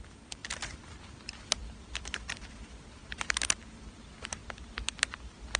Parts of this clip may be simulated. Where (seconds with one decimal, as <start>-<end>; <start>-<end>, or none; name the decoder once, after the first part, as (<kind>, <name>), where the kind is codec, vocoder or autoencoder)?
0.4-1.1 (vocoder, BigVGAN v2)